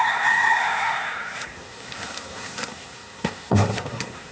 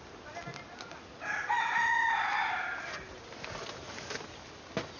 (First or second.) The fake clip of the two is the first